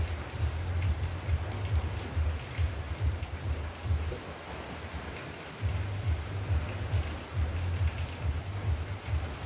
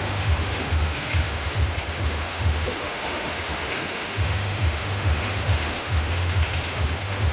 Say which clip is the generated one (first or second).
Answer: second